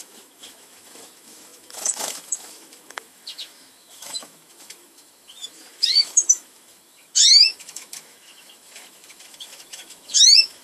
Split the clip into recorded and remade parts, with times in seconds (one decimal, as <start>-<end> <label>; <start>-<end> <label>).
0.0-10.6 remade